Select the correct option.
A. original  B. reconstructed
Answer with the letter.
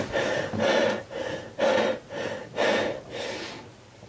A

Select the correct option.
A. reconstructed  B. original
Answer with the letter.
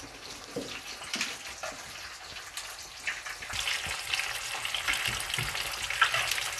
B